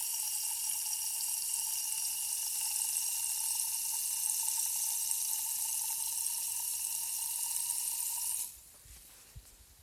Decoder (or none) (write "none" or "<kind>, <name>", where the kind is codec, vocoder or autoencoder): none